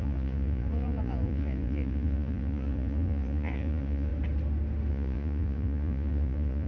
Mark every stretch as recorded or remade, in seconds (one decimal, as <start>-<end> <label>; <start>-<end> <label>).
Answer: 0.0-4.1 remade; 4.1-4.9 recorded; 4.9-6.7 remade